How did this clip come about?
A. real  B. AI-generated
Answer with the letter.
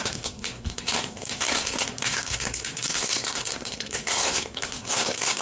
B